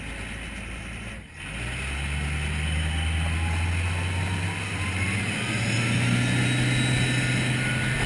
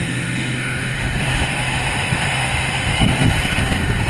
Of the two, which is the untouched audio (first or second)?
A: first